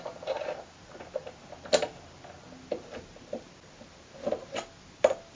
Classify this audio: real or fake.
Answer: real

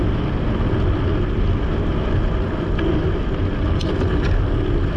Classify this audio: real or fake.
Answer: real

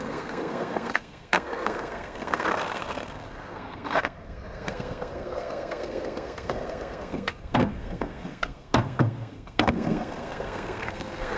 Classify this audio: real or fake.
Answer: fake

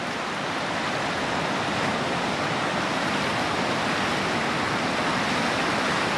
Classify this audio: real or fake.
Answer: real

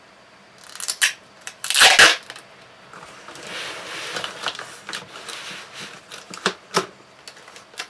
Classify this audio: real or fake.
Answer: real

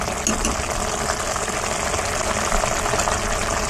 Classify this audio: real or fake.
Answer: real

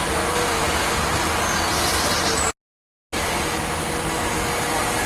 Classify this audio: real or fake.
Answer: real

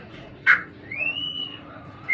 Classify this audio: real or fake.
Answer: fake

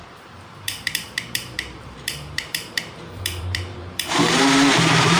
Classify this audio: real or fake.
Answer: fake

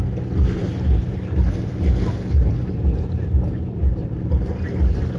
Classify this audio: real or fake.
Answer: real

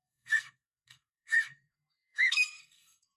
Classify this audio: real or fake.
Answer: fake